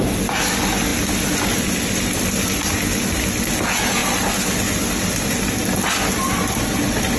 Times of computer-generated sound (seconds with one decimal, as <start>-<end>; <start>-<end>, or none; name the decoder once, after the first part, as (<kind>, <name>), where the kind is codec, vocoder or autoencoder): none